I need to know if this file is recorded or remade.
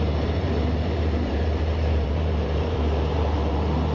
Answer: remade